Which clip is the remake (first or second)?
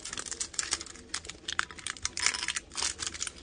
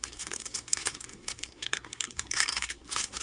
second